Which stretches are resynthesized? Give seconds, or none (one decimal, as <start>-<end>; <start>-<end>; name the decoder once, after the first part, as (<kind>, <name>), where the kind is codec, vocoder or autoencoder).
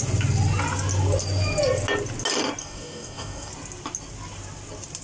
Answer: 2.6-3.5 (codec, DAC)